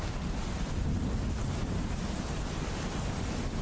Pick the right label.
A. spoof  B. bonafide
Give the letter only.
B